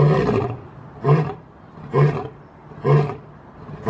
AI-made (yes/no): no